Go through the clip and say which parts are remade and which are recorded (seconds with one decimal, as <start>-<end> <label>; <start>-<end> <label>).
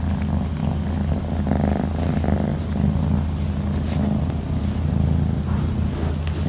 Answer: 0.0-6.5 recorded